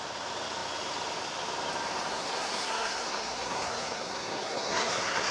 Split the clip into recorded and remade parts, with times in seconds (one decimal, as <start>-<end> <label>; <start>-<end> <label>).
0.0-2.1 recorded; 2.1-5.3 remade